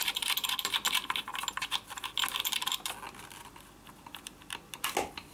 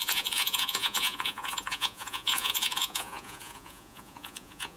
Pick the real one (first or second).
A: first